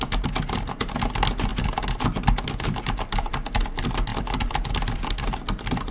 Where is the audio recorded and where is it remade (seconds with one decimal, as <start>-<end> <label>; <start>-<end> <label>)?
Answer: 0.0-5.9 recorded